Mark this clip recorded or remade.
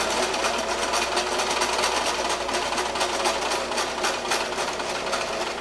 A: recorded